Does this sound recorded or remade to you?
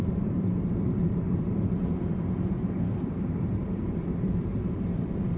remade